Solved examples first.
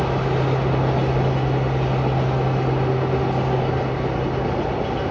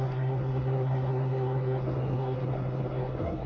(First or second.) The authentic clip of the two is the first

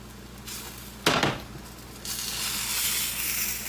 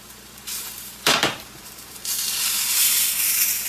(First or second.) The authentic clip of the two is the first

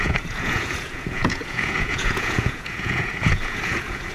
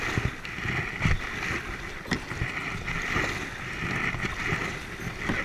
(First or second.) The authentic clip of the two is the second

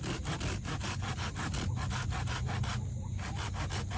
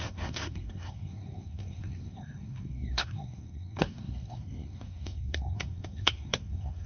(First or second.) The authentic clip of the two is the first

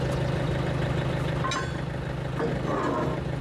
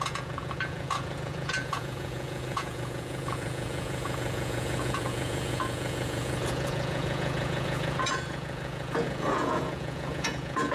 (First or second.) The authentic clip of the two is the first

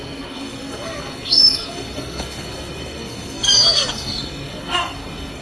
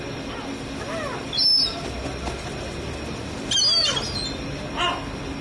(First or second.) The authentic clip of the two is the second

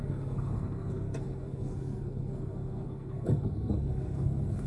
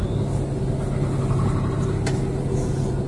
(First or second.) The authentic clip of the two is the second